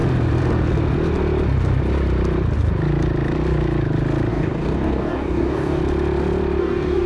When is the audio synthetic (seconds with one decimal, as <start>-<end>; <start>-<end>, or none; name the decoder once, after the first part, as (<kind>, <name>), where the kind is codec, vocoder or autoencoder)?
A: 4.3-5.8 (codec, DAC); 6.6-7.1

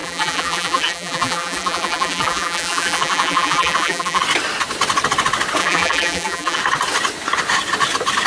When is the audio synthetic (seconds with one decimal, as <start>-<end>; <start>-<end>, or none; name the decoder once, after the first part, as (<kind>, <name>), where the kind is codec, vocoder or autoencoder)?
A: 0.0-4.2 (vocoder, BigVGAN v2); 5.6-6.6

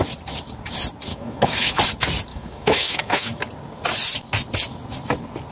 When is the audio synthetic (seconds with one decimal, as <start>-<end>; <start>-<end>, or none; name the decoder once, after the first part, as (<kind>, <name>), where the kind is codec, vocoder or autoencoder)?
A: 1.1-1.8 (autoencoder, DAC-VAE); 2.3-3.4

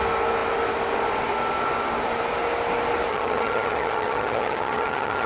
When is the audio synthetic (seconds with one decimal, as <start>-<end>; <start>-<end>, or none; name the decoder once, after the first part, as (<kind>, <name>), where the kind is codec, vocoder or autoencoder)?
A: 3.1-5.3 (vocoder, HiFi-GAN)

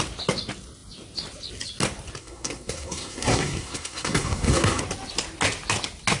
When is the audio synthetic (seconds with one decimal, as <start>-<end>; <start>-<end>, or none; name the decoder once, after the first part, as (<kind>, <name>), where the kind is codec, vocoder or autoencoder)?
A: 2.2-4.8 (codec, SNAC)